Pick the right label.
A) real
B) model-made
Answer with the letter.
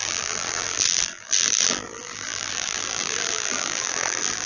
B